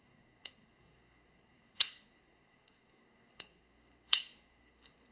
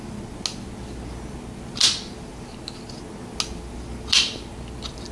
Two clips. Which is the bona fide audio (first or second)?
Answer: second